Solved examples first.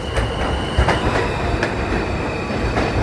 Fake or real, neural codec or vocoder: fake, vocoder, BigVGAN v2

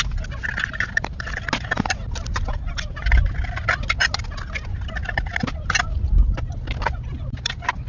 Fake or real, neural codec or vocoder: real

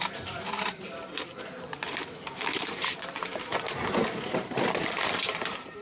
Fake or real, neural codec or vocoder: fake, vocoder, BigVGAN v2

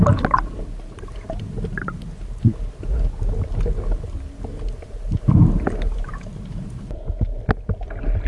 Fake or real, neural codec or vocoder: real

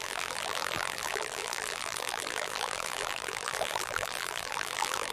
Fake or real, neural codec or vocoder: fake, vocoder, BigVGAN v2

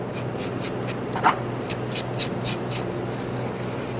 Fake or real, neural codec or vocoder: real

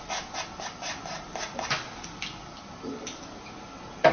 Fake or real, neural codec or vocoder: real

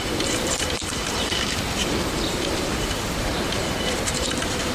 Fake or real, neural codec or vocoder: fake, vocoder, BigVGAN v2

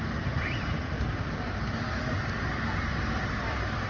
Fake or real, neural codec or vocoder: fake, vocoder, BigVGAN v2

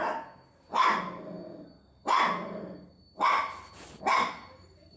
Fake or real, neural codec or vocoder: real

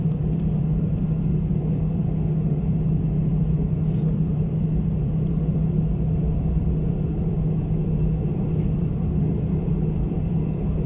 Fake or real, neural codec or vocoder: fake, vocoder, BigVGAN v2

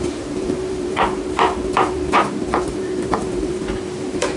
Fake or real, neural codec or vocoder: fake, vocoder, BigVGAN v2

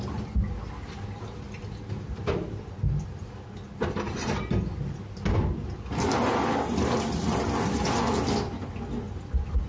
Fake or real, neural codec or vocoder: real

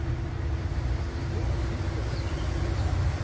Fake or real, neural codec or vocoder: real